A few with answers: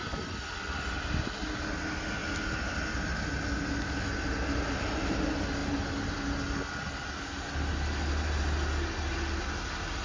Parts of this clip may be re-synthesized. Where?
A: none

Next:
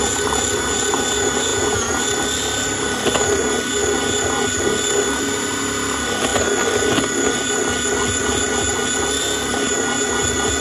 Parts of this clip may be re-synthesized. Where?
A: 1.5-2.0 (vocoder, Vocos)